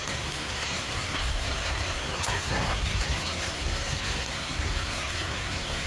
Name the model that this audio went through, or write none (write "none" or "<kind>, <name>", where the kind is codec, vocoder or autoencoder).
codec, SNAC